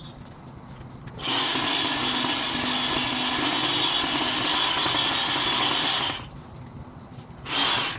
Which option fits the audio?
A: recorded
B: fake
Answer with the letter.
A